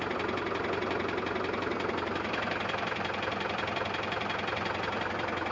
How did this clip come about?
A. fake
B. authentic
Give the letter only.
B